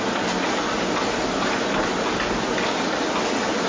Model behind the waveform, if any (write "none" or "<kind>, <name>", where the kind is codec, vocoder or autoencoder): none